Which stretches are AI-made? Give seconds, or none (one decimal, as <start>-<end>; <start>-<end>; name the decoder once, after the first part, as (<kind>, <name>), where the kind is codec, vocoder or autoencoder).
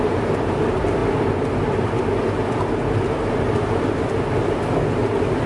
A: 0.0-1.0 (vocoder, BigVGAN v2); 3.4-5.5